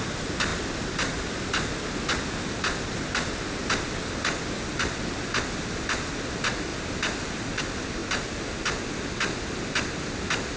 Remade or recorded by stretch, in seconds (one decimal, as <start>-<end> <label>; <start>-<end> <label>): 0.0-10.6 recorded